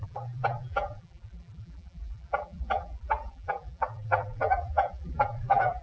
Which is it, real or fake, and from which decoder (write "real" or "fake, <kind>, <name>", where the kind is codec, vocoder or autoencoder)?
fake, vocoder, BigVGAN v2